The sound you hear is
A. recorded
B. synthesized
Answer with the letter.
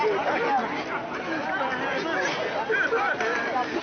A